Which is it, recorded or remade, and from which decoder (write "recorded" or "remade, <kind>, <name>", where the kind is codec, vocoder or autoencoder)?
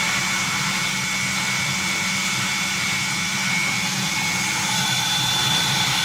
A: recorded